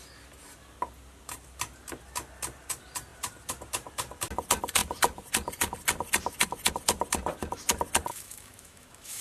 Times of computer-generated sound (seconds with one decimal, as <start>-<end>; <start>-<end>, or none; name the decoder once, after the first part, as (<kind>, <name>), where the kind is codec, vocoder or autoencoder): 8.1-9.2 (autoencoder, DAC-VAE)